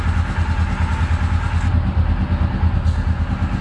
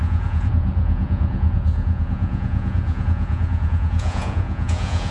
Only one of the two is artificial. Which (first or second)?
second